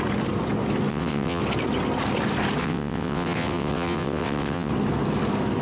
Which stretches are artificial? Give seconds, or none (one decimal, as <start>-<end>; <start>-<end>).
0.9-1.4; 2.6-4.7